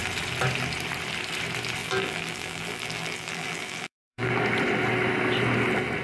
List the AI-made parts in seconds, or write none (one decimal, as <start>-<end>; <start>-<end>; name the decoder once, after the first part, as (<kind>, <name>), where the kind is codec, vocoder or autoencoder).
1.8-4.3 (vocoder, BigVGAN v2)